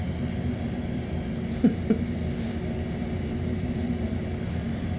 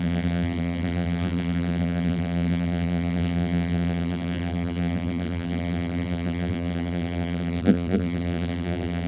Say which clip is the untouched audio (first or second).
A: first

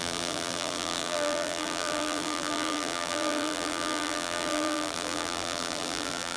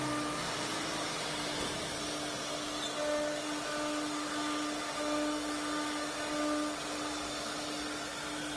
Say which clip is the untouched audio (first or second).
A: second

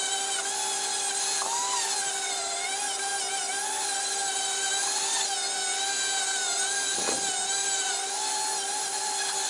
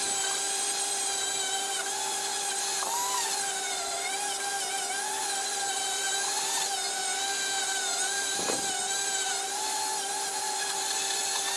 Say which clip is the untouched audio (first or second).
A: first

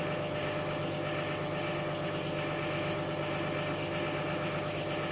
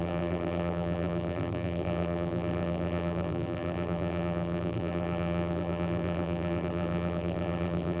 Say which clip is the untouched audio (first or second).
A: first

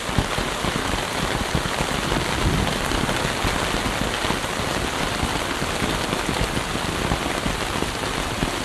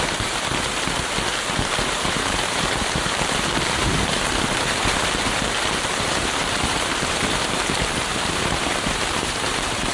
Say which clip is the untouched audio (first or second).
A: first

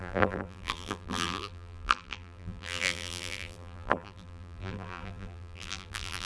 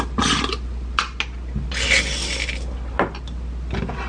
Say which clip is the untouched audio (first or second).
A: second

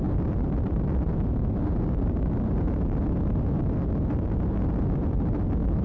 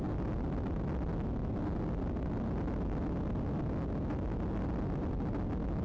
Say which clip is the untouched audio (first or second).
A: second